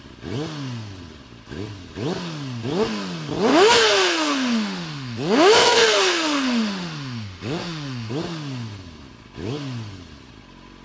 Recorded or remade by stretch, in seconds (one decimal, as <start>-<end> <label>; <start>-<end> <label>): 0.0-3.5 recorded; 3.5-8.1 remade; 8.1-10.8 recorded

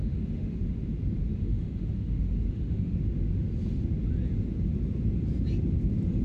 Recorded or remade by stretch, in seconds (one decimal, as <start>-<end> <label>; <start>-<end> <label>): 0.0-0.6 remade; 0.6-1.2 recorded; 1.2-3.0 remade; 3.0-6.2 recorded

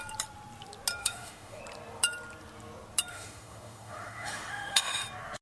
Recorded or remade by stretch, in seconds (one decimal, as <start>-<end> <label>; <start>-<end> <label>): 0.0-1.0 recorded; 1.0-1.6 remade; 1.6-3.1 recorded; 3.1-5.0 remade; 5.0-5.4 recorded